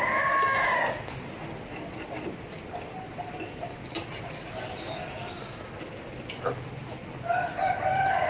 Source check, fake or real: real